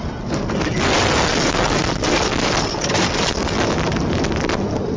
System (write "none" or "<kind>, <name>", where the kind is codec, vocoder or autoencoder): none